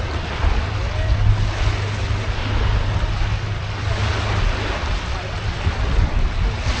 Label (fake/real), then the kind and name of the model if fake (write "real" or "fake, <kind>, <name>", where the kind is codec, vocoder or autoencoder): real